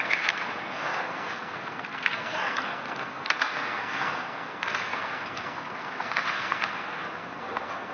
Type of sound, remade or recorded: remade